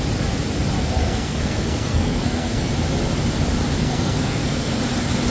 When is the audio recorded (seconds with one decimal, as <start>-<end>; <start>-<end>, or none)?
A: 0.0-1.0; 2.7-3.8; 4.8-5.3